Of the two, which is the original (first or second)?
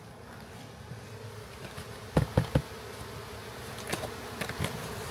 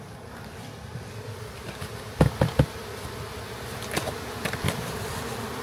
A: first